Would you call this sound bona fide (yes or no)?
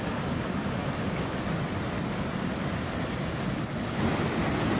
yes